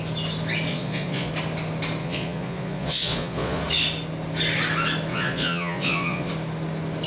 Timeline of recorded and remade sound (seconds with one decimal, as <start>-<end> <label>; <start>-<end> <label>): 0.0-0.7 recorded; 0.7-1.3 remade; 1.3-2.0 recorded; 2.0-3.6 remade; 3.6-5.1 recorded; 5.1-6.3 remade; 6.3-7.1 recorded